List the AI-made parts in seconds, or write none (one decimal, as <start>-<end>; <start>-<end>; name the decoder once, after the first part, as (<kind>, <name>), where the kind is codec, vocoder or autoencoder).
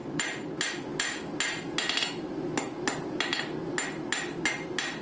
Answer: none